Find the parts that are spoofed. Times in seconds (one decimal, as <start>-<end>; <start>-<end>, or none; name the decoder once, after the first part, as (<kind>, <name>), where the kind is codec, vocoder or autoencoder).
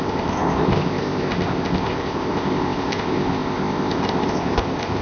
0.0-5.0 (codec, ZipCodec)